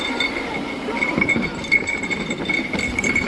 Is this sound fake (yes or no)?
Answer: yes